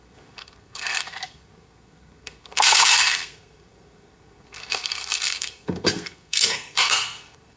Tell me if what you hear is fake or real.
fake